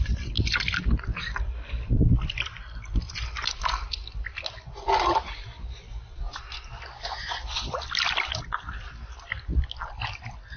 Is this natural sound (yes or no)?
yes